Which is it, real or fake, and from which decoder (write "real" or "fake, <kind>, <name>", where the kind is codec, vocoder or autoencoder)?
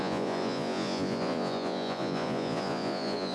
fake, vocoder, Vocos